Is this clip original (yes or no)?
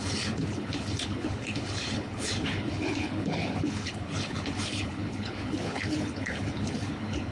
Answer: no